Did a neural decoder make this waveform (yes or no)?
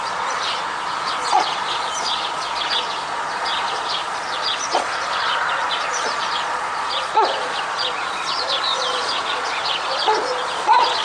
yes